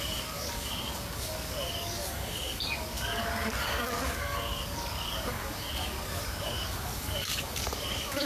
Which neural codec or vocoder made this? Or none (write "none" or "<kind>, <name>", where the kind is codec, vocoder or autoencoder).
codec, DAC